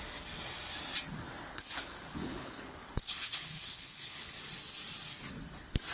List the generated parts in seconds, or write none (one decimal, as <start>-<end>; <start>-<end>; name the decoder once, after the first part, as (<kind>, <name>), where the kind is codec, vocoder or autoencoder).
1.5-4.4 (codec, HILCodec)